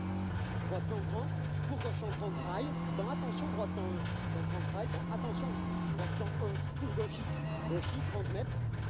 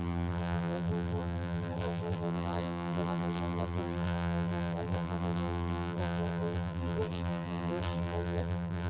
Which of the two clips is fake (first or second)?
second